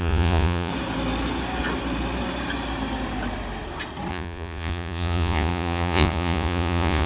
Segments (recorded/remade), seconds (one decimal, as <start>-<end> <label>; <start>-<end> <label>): 0.0-0.7 remade; 0.7-4.1 recorded; 4.1-7.1 remade